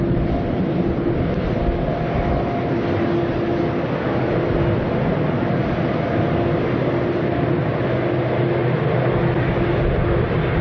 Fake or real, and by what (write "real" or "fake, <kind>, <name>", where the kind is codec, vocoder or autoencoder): real